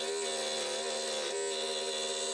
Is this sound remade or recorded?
recorded